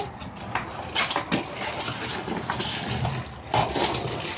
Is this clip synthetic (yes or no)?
no